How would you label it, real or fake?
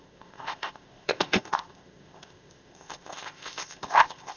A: fake